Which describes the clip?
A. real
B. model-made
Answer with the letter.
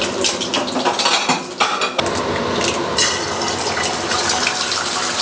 A